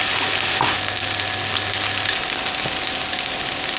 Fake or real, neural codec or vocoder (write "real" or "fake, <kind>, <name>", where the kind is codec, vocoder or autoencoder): real